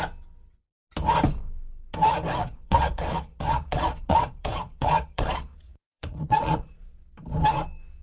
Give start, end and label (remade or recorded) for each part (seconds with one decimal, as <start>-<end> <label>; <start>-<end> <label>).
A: 0.0-2.4 recorded; 2.4-7.0 remade; 7.0-8.0 recorded